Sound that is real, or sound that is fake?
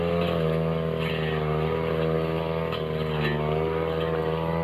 real